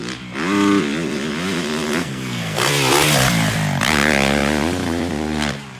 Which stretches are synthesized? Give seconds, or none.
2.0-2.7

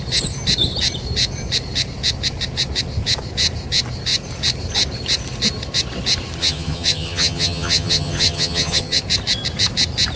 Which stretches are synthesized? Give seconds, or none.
6.4-9.0

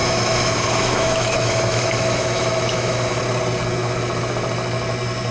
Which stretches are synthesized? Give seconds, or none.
0.0-3.2

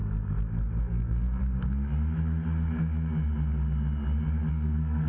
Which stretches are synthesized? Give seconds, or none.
0.8-1.4; 4.5-5.1